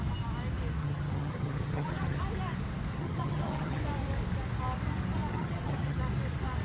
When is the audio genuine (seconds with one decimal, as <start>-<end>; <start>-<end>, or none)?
0.0-0.8; 2.2-2.9; 3.8-5.3; 6.0-6.6